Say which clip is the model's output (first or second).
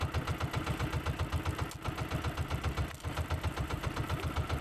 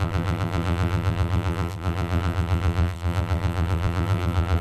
second